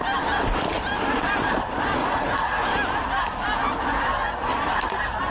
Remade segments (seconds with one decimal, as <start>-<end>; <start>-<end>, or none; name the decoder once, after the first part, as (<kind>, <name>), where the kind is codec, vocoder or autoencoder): 2.0-2.7 (vocoder, Vocos)